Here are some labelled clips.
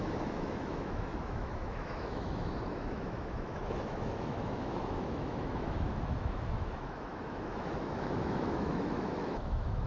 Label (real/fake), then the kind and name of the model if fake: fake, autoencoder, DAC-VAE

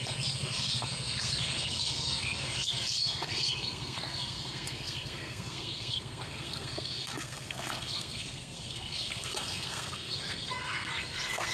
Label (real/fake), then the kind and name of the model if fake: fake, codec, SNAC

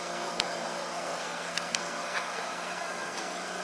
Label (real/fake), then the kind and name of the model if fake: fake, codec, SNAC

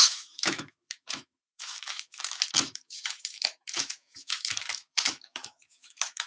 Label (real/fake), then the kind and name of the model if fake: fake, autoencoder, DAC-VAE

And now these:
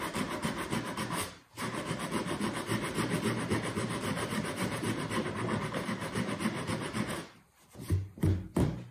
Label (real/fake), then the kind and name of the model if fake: fake, vocoder, BigVGAN v2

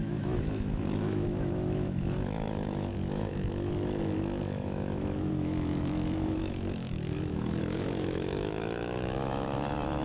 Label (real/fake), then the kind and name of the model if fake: fake, autoencoder, DAC-VAE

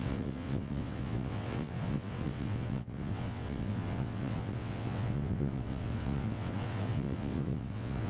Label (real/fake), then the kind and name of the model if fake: fake, vocoder, WaveNeXt